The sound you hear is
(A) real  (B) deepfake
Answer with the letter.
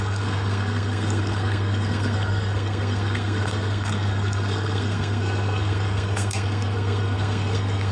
B